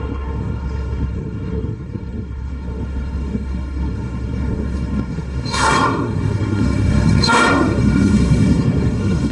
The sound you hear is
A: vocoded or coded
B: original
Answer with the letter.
A